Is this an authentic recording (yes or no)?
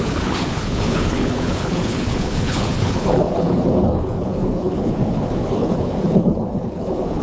no